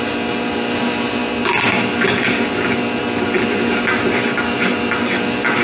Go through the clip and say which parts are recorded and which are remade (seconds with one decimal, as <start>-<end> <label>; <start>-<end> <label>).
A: 0.0-5.6 recorded

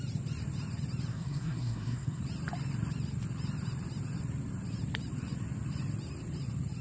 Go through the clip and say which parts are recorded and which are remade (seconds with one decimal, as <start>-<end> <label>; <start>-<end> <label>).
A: 0.0-1.1 recorded; 1.1-2.2 remade; 2.2-6.8 recorded

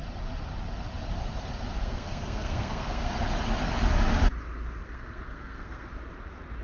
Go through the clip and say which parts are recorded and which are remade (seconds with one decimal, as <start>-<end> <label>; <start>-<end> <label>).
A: 0.0-1.8 recorded; 1.8-3.1 remade; 3.1-4.8 recorded; 4.8-5.9 remade; 5.9-6.6 recorded

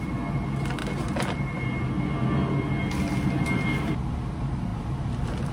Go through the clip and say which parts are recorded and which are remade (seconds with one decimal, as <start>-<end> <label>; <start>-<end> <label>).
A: 0.0-5.5 recorded

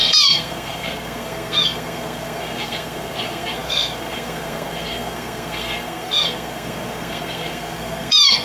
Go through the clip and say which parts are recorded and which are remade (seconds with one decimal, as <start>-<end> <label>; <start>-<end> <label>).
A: 0.0-8.4 remade